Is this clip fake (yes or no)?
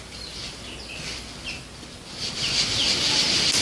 no